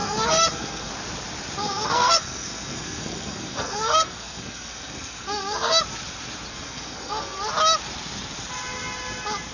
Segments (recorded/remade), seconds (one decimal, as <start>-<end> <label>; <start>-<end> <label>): 0.0-0.9 remade; 0.9-1.6 recorded; 1.6-5.8 remade; 5.8-6.5 recorded; 6.5-7.4 remade; 7.4-9.5 recorded